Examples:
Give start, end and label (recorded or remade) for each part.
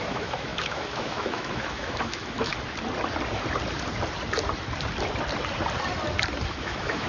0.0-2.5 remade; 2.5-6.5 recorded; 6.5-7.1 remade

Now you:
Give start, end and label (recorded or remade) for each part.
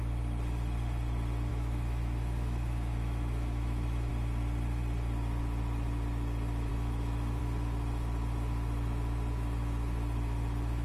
0.0-1.5 recorded; 1.5-4.1 remade; 4.1-6.7 recorded; 6.7-7.4 remade; 7.4-10.8 recorded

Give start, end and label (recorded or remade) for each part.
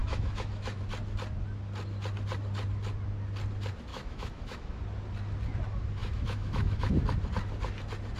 0.0-0.8 remade; 0.8-3.9 recorded; 3.9-4.8 remade; 4.8-6.0 recorded; 6.0-6.9 remade; 6.9-8.2 recorded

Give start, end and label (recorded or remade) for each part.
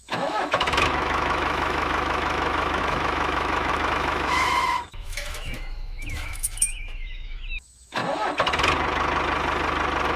0.0-8.0 remade; 8.0-10.2 recorded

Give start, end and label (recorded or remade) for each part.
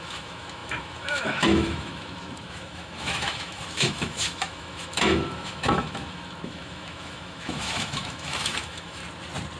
0.0-9.0 remade; 9.0-9.6 recorded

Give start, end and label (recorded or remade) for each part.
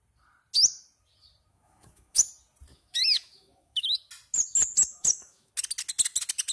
0.0-1.5 recorded; 1.5-2.3 remade; 2.3-2.7 recorded; 2.7-4.0 remade; 4.0-4.7 recorded; 4.7-5.5 remade; 5.5-6.5 recorded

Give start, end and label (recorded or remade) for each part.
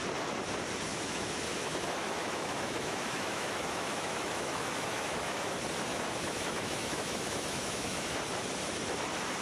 0.0-0.9 recorded; 0.9-5.5 remade; 5.5-5.9 recorded; 5.9-8.2 remade; 8.2-9.4 recorded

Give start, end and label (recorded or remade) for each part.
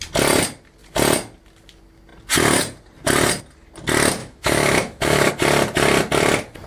0.0-4.2 recorded; 4.2-5.3 remade; 5.3-6.7 recorded